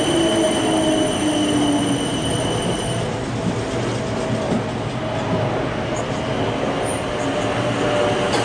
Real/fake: real